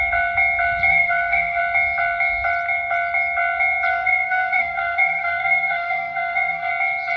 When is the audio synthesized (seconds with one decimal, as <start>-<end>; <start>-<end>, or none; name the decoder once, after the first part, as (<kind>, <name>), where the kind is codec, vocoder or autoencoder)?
0.9-1.6 (codec, SNAC); 3.9-6.7